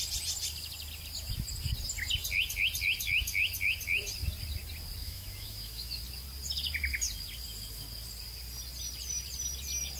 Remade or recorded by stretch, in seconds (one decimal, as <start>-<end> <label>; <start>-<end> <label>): 0.0-5.0 recorded; 5.0-6.0 remade; 6.0-10.0 recorded